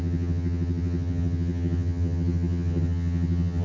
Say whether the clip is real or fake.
fake